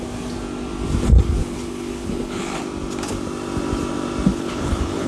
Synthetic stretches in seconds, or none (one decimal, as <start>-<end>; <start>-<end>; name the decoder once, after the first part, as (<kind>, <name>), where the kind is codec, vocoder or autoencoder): 1.4-2.6 (codec, HILCodec); 4.3-5.1